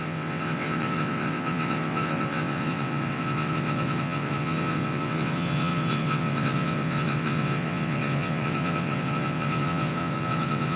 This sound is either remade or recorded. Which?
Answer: remade